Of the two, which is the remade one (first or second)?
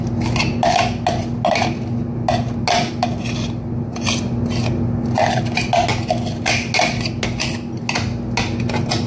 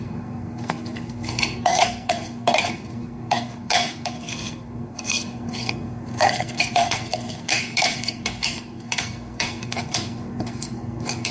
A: second